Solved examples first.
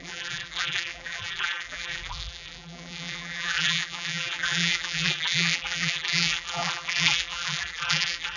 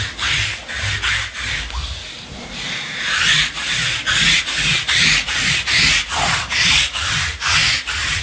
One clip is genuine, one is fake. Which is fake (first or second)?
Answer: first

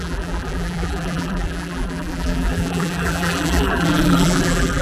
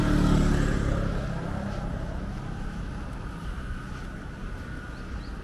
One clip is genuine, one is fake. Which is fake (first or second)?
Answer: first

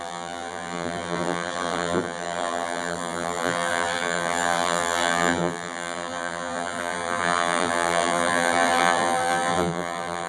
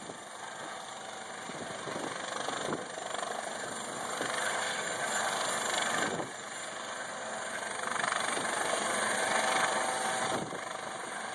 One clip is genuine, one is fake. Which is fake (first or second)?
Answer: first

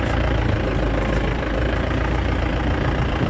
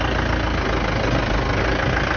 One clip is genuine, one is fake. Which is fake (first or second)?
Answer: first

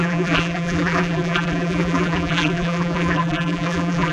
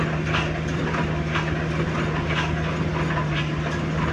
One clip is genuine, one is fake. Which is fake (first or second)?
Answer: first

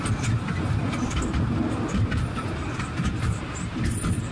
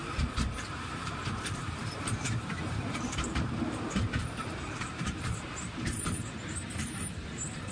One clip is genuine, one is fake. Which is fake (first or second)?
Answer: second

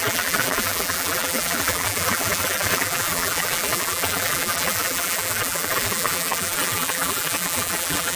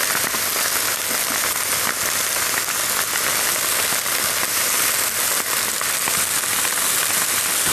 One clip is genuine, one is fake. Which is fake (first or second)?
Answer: first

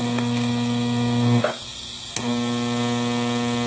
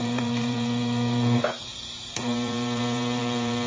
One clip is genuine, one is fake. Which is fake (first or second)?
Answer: second